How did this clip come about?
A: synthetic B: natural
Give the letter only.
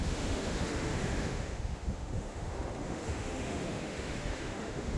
A